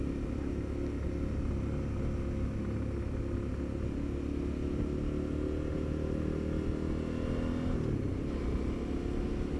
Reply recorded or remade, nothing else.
recorded